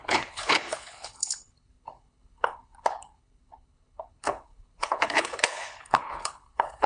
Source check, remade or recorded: remade